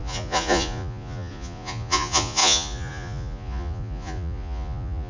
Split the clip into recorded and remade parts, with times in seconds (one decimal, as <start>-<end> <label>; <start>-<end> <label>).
0.0-5.1 remade